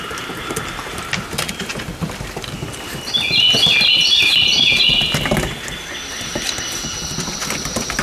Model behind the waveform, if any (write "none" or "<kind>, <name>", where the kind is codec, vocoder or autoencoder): none